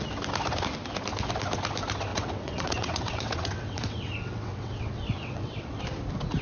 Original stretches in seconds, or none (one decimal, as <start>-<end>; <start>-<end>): 0.0-2.1; 5.8-6.4

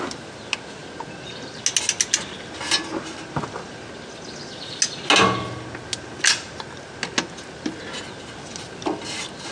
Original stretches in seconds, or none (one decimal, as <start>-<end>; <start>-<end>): 0.0-9.5

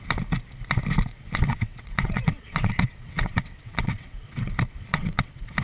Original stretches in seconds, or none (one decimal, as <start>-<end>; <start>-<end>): 0.0-1.1; 4.5-4.9

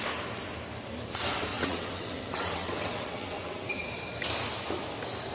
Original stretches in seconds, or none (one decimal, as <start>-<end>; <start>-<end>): 0.0-1.5; 3.9-5.3